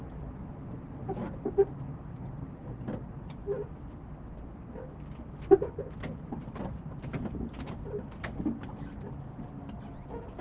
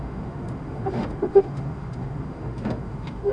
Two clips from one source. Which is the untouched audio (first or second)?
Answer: first